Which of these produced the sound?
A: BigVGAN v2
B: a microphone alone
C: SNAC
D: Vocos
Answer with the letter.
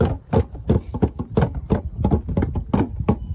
B